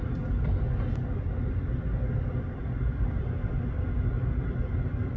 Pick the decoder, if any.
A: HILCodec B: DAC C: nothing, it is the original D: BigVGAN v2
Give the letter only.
C